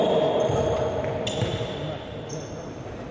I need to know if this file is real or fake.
real